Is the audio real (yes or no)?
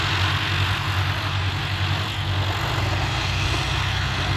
yes